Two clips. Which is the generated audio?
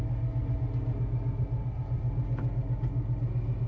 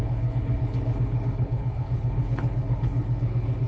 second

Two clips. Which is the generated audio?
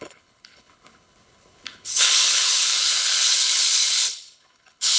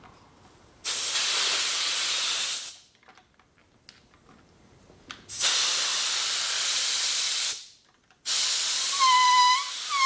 first